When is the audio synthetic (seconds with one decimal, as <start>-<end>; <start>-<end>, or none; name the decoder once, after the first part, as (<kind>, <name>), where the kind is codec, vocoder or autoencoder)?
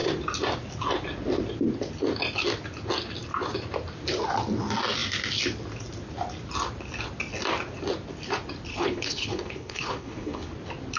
8.7-10.5 (codec, HILCodec)